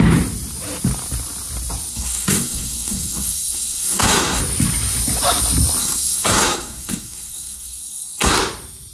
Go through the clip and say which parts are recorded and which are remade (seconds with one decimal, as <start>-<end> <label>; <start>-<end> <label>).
0.0-1.9 recorded; 1.9-4.4 remade; 4.4-5.8 recorded; 5.8-8.3 remade; 8.3-8.9 recorded